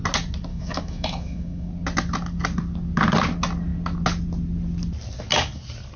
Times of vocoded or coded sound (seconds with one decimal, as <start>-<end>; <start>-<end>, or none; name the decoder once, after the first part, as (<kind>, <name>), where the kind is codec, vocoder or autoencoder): 0.5-1.7 (autoencoder, DAC-VAE)